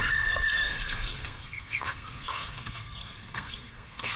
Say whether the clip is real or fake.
fake